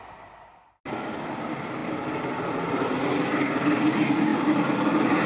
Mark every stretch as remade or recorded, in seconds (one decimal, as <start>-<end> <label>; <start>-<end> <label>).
0.0-4.3 recorded; 4.3-5.3 remade